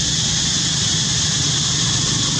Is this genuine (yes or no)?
yes